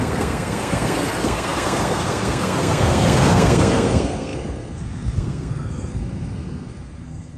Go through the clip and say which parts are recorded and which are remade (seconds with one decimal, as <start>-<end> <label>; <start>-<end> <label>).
0.0-7.4 remade